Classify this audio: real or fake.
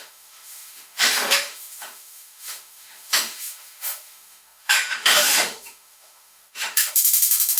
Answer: fake